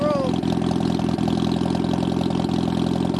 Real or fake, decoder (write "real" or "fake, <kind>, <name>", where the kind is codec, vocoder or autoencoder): real